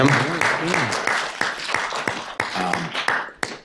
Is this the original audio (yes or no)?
yes